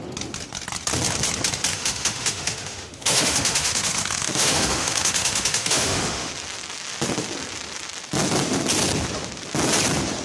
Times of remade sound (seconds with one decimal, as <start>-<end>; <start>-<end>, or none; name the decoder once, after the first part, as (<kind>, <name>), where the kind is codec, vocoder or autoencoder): 1.7-6.3 (autoencoder, DAC-VAE)